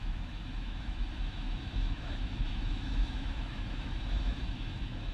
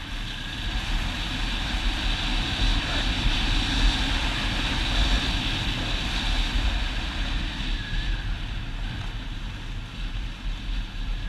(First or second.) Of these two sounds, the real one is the second